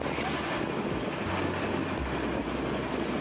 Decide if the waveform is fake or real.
real